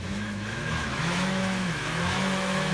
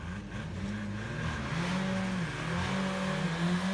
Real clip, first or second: second